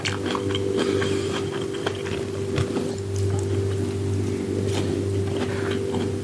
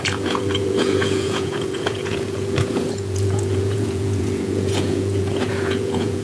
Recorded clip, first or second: first